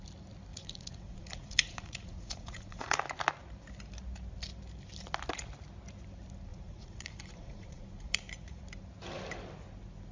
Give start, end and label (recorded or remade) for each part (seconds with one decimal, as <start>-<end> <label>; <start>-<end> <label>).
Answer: 0.0-0.5 recorded; 0.5-3.0 remade; 3.0-6.5 recorded; 6.5-8.6 remade; 8.6-10.1 recorded